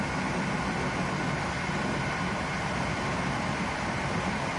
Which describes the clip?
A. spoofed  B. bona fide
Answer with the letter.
B